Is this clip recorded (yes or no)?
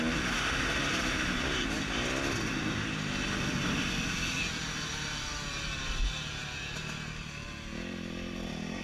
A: yes